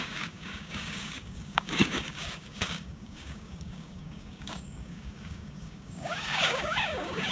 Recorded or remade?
remade